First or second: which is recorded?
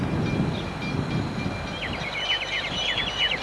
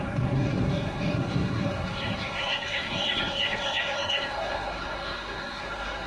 first